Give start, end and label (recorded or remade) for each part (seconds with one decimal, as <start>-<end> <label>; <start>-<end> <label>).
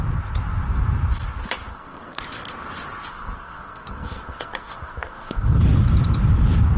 0.0-1.7 recorded; 1.7-2.2 remade; 2.2-3.1 recorded; 3.1-5.6 remade; 5.6-6.8 recorded